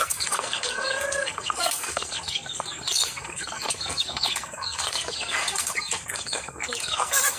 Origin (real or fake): fake